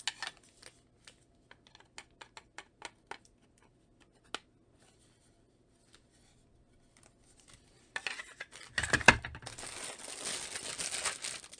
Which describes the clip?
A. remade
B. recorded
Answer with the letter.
B